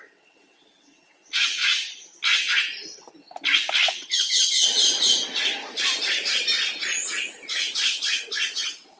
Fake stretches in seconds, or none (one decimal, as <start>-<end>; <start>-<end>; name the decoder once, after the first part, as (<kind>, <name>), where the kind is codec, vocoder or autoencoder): 0.0-1.6 (vocoder, WaveNeXt); 3.9-4.7; 8.4-9.0